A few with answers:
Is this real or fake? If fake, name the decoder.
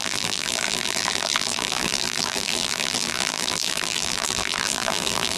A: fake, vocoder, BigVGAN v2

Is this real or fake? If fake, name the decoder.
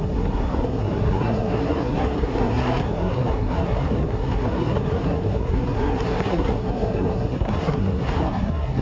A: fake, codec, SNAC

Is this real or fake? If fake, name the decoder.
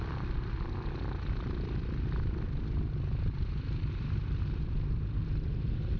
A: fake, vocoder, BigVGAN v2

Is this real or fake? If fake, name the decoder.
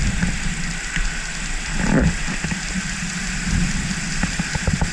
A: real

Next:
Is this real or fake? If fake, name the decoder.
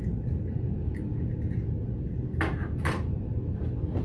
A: real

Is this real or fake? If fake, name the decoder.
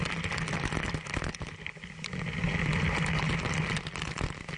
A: real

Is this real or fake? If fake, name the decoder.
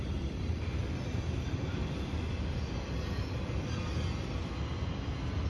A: real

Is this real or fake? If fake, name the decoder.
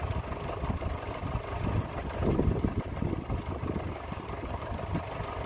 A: real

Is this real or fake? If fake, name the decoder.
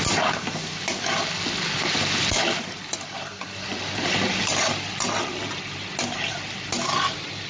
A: real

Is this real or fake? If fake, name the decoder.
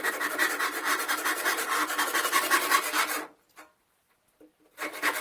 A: real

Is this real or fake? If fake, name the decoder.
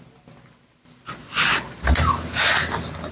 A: real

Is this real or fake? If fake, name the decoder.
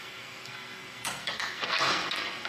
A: fake, codec, SNAC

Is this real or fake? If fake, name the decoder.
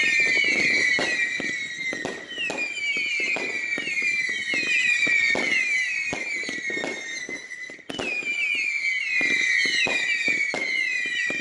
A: real